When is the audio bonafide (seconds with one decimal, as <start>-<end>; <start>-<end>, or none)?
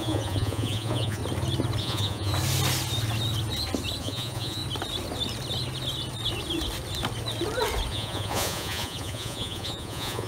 1.2-1.8; 2.3-4.0; 4.6-7.9